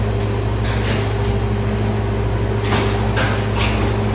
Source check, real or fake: real